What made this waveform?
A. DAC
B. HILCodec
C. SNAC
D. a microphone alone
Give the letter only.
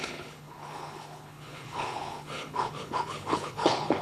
B